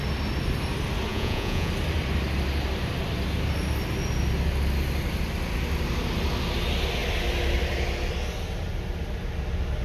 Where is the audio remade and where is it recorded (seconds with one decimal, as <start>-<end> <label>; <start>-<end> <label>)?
0.0-1.1 recorded; 1.1-1.7 remade; 1.7-9.8 recorded